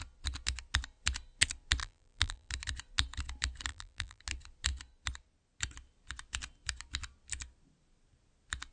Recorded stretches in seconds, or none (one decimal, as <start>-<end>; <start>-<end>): 0.0-1.8; 2.5-3.7; 4.2-8.7